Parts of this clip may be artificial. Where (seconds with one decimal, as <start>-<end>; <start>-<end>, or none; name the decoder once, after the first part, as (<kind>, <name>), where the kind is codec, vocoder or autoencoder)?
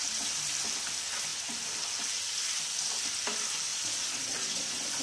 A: 3.7-5.0 (vocoder, Vocos)